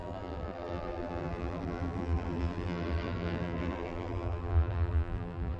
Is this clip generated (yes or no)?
yes